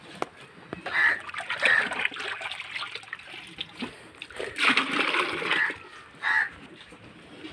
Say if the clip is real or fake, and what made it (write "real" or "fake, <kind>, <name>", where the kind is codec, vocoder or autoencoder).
real